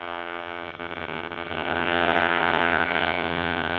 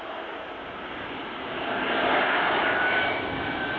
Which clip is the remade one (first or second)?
first